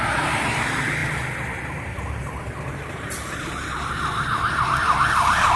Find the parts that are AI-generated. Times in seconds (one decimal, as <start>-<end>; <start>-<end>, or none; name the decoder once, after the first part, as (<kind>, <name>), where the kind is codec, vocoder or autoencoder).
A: none